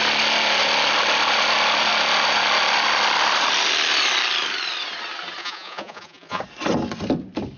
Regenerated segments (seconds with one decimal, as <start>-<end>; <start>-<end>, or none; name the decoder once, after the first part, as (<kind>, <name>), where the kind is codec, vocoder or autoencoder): 5.4-6.4 (vocoder, Vocos)